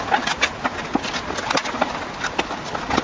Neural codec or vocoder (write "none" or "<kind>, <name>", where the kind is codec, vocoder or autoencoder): none